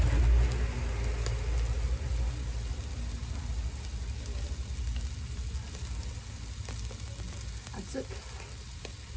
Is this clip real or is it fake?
real